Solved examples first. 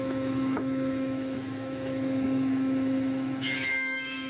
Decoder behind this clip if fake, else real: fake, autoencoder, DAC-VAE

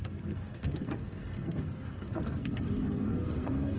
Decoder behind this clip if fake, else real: fake, codec, SNAC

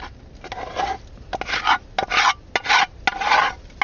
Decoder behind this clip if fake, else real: real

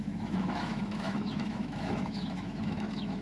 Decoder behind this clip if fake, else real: fake, autoencoder, DAC-VAE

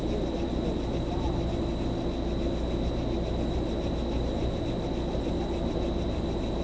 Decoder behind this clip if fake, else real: real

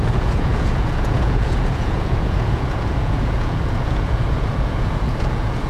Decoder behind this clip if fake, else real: fake, vocoder, Vocos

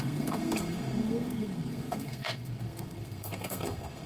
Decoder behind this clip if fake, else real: fake, codec, SNAC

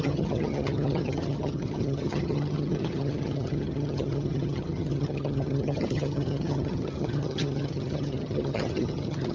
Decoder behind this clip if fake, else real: fake, vocoder, HiFi-GAN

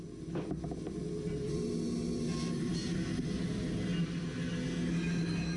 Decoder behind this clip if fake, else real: real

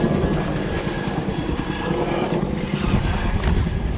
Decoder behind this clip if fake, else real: real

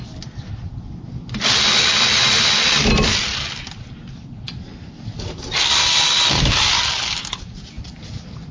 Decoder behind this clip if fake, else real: real